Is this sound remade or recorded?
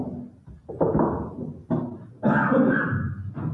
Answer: recorded